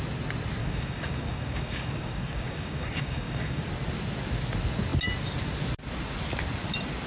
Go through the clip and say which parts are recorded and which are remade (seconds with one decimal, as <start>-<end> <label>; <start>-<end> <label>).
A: 0.0-0.6 recorded; 0.6-3.6 remade; 3.6-7.1 recorded